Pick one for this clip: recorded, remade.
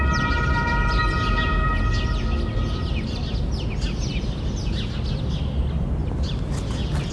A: recorded